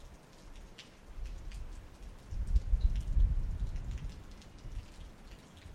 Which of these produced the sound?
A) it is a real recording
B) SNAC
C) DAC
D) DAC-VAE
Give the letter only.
A